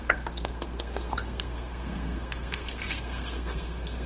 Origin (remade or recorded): remade